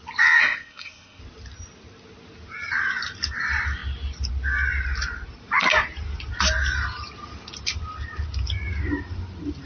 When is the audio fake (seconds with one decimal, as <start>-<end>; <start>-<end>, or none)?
0.4-1.2